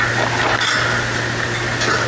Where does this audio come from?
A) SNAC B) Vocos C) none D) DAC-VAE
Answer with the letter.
C